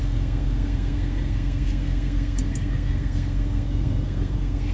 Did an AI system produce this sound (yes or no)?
yes